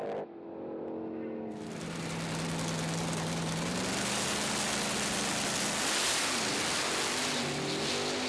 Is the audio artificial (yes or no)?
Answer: no